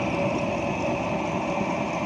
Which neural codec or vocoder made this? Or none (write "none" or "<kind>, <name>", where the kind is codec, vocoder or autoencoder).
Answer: none